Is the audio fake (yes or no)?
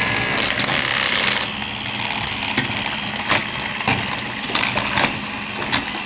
no